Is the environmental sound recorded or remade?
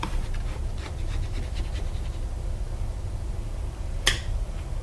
recorded